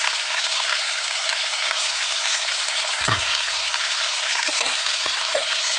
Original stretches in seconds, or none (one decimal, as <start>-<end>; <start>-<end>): none